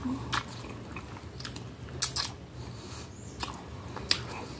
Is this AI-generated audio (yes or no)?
no